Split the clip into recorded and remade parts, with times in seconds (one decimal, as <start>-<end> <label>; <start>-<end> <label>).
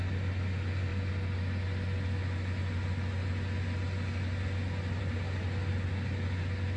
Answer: 0.0-6.8 recorded